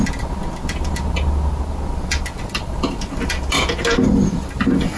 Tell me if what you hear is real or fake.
real